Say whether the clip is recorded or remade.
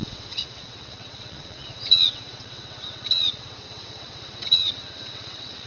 remade